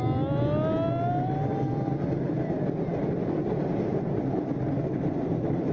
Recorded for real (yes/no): yes